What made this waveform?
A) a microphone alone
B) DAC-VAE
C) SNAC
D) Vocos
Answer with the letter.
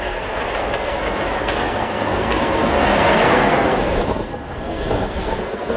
C